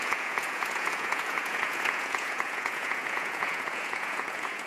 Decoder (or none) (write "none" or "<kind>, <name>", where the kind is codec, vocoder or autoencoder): vocoder, Vocos